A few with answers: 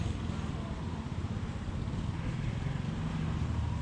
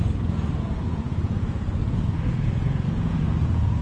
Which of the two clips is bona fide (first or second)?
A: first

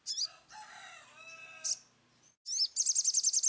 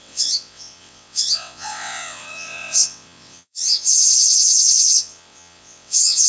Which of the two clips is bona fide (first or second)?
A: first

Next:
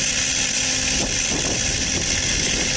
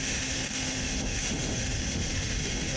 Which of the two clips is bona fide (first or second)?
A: first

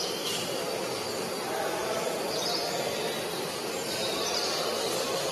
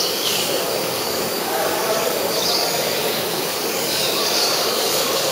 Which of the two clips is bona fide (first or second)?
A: first